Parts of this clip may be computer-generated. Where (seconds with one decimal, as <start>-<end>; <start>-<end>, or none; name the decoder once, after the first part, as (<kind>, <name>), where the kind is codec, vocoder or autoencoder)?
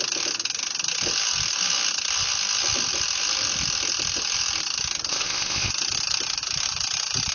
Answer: 5.1-5.7 (codec, ZipCodec)